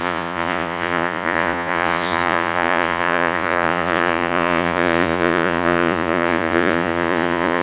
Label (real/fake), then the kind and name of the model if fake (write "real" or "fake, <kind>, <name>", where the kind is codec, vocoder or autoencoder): fake, vocoder, Vocos